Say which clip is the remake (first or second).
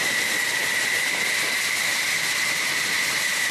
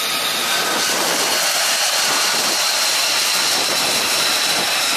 first